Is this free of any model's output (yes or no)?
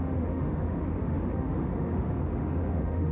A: no